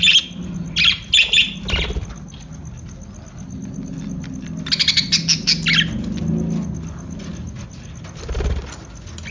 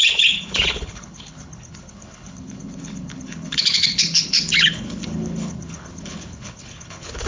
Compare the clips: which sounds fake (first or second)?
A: second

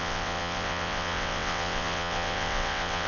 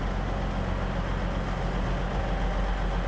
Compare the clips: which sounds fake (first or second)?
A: first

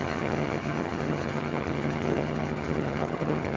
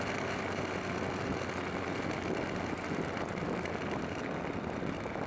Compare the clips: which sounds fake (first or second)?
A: first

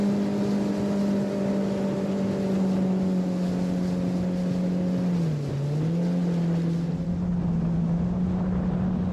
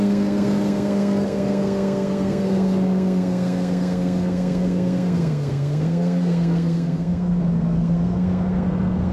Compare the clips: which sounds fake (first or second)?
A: second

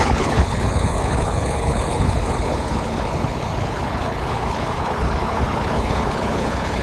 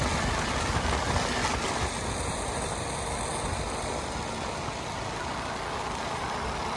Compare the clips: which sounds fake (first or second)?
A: first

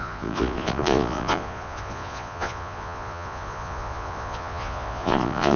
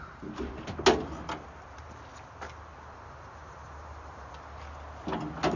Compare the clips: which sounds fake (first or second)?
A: first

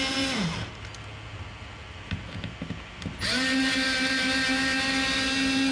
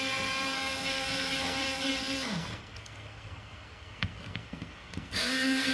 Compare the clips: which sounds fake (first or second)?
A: second